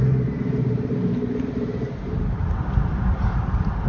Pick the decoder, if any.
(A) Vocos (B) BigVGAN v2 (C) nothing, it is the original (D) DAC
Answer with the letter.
B